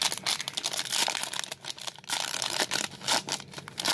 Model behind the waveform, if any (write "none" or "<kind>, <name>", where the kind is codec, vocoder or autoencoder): none